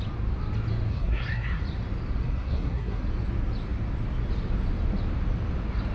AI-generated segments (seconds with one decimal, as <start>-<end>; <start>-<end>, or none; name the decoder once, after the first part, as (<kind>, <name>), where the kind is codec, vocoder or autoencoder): 0.9-1.6 (codec, SNAC); 2.2-3.0